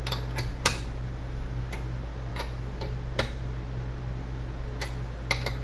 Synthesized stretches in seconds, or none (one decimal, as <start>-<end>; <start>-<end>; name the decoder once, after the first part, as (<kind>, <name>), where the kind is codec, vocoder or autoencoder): none